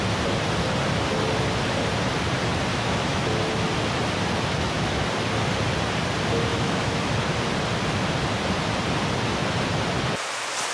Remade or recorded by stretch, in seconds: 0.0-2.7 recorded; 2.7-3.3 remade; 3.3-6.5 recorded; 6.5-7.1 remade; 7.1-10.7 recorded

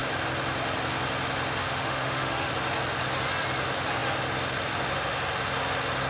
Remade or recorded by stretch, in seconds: 0.0-1.6 recorded; 1.6-2.5 remade; 2.5-6.1 recorded

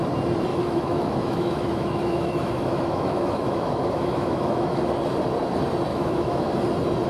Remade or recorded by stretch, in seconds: 0.0-0.5 recorded; 0.5-4.8 remade; 4.8-5.9 recorded; 5.9-6.5 remade; 6.5-7.1 recorded

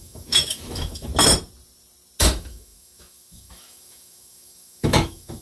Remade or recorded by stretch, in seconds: 0.0-1.1 remade; 1.1-2.2 recorded; 2.2-5.4 remade

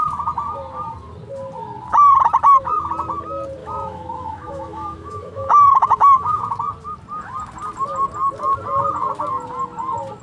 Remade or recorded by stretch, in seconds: 0.0-3.6 recorded; 3.6-6.4 remade; 6.4-10.2 recorded

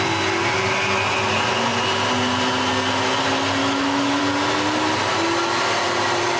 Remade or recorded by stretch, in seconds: 0.0-3.6 recorded; 3.6-4.2 remade; 4.2-6.4 recorded

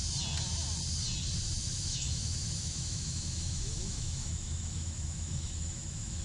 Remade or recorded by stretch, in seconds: 0.0-1.6 recorded; 1.6-6.2 remade

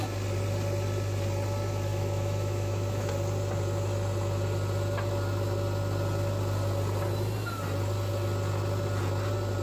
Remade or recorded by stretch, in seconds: 0.0-1.9 recorded; 1.9-3.1 remade; 3.1-9.6 recorded